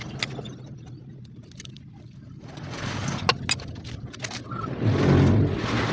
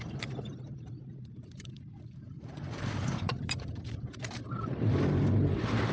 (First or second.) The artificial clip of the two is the second